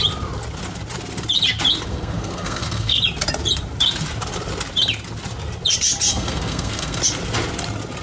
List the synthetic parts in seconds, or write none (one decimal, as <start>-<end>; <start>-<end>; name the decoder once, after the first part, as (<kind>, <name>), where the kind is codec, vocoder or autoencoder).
1.9-3.0 (codec, SNAC); 6.1-7.0